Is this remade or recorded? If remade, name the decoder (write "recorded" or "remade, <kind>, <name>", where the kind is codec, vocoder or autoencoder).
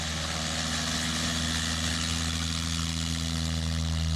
recorded